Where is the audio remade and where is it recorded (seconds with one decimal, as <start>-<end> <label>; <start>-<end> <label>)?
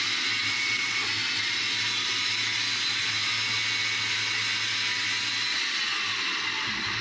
0.0-0.4 recorded; 0.4-1.0 remade; 1.0-7.0 recorded